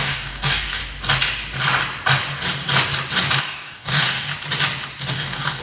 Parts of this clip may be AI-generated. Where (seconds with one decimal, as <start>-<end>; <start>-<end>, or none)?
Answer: 0.0-0.8; 3.4-4.3; 5.1-5.6